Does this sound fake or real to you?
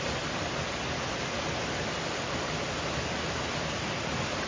real